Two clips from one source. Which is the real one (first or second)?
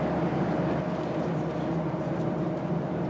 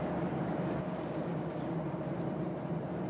first